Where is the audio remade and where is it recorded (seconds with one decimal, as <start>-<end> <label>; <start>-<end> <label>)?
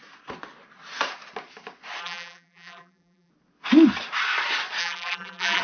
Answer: 0.0-2.0 recorded; 2.0-3.3 remade; 3.3-4.8 recorded; 4.8-5.6 remade